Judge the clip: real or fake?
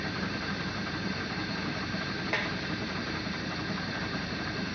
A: fake